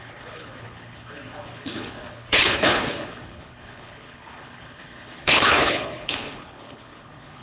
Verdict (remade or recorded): remade